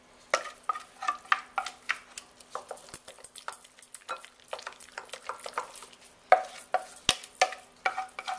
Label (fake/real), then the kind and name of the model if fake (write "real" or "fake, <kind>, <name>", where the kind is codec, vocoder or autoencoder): real